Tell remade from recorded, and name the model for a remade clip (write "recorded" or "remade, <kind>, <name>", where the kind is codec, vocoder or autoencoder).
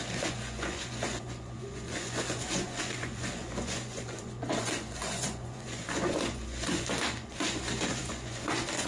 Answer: remade, vocoder, Vocos